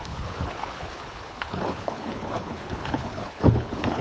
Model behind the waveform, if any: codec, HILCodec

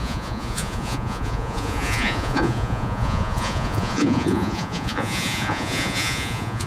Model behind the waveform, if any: vocoder, Vocos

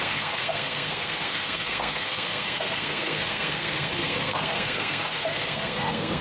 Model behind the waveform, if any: codec, SNAC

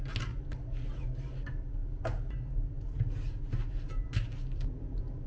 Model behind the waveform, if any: none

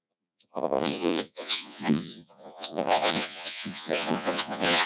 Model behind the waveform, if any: vocoder, Vocos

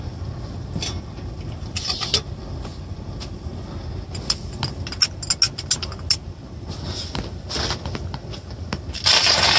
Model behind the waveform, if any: none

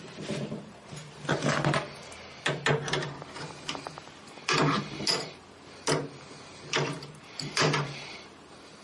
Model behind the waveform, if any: none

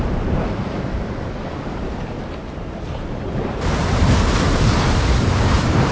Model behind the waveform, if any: vocoder, BigVGAN v2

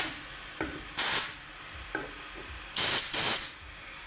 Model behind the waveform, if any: none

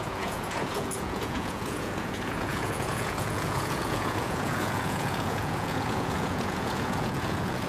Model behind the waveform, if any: vocoder, Vocos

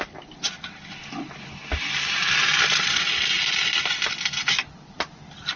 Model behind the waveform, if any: none